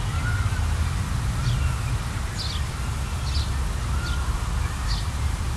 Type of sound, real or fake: real